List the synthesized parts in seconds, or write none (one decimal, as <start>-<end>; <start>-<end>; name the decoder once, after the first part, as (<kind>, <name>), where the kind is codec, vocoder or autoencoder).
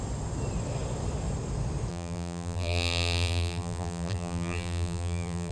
1.9-5.5 (vocoder, BigVGAN v2)